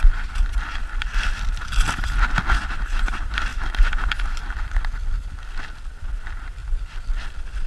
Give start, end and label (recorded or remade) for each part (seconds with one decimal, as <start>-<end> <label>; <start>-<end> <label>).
0.0-6.6 recorded; 6.6-7.1 remade; 7.1-7.7 recorded